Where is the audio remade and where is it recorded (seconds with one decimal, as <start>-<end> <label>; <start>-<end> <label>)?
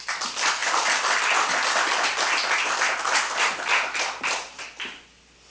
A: 0.0-5.5 recorded